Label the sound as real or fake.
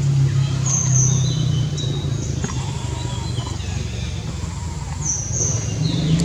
real